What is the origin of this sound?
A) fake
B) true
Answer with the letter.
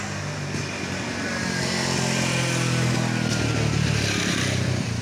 B